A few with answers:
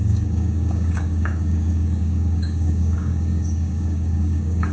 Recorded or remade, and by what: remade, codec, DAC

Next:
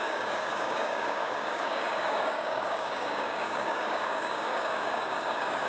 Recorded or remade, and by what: remade, codec, DAC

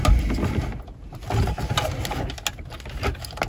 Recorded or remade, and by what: recorded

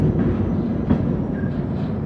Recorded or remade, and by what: recorded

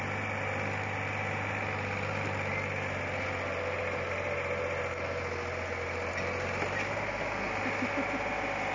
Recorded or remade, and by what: recorded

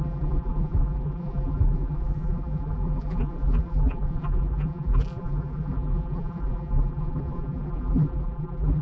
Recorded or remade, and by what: remade, vocoder, BigVGAN v2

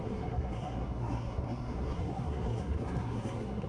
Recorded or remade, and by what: remade, codec, SNAC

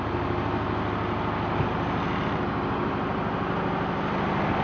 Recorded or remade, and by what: recorded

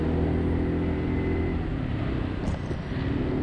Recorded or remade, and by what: recorded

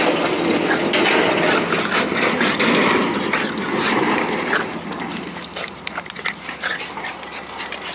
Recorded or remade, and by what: recorded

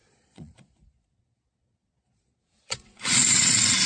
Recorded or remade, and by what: remade, vocoder, Vocos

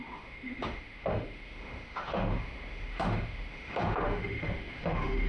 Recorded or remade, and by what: remade, autoencoder, DAC-VAE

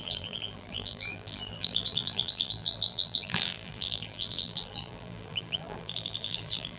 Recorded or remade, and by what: remade, vocoder, BigVGAN v2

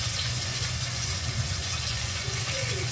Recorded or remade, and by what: remade, vocoder, Vocos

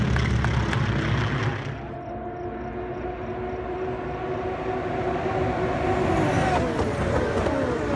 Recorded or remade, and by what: recorded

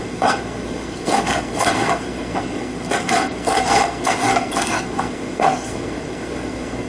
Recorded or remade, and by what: remade, codec, SNAC